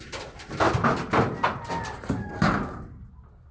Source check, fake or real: real